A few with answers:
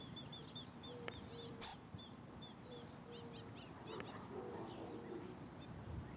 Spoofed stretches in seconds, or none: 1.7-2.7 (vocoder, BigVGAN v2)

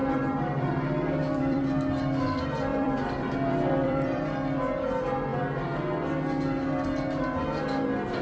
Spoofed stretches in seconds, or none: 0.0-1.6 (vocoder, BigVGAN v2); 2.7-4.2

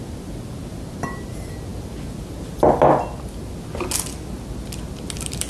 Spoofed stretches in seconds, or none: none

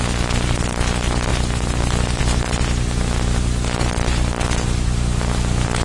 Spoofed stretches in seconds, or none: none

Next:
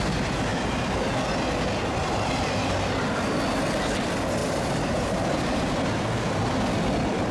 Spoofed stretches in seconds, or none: 0.5-1.1 (vocoder, BigVGAN v2); 2.0-3.0; 4.4-5.8

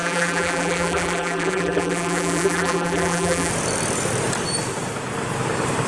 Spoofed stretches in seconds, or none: 0.0-3.5 (vocoder, BigVGAN v2)